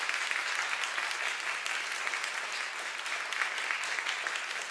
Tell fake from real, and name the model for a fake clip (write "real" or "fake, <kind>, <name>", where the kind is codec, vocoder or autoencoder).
real